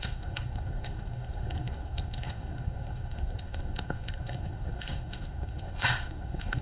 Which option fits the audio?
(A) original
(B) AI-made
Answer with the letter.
B